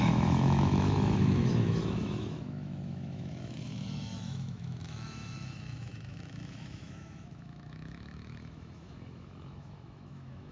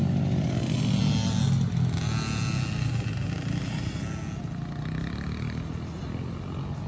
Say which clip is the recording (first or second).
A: second